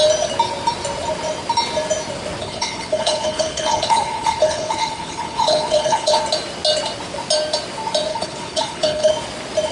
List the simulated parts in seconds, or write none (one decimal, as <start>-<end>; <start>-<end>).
2.4-6.2; 8.1-9.1

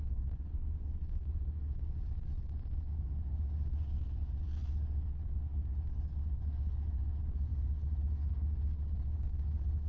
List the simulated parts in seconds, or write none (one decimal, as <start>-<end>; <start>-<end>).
none

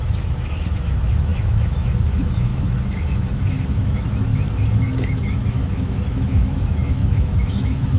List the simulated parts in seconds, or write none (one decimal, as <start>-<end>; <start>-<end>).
0.0-4.3; 4.9-8.0

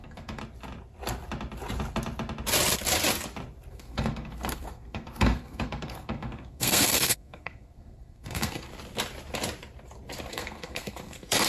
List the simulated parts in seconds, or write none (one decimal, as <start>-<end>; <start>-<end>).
0.0-0.4; 3.7-8.7; 10.3-11.5

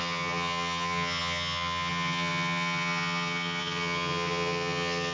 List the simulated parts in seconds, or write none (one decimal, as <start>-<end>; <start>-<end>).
0.0-5.1

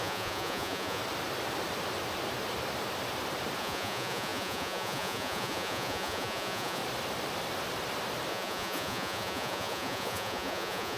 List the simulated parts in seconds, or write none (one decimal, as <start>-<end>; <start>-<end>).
0.0-1.0; 3.6-6.8; 8.3-11.0

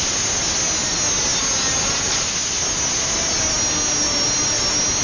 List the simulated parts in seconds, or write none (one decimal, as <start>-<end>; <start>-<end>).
none

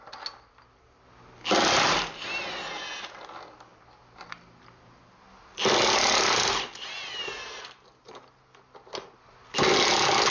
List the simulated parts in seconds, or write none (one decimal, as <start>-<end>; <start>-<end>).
none